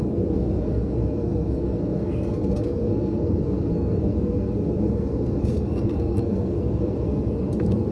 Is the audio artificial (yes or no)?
yes